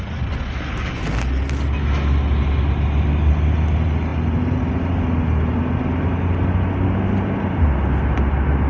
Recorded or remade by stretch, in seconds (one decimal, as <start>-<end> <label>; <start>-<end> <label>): 0.0-8.7 recorded